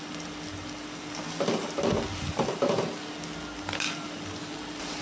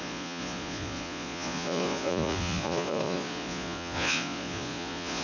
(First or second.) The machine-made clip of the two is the second